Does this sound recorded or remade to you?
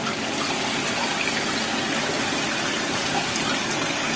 recorded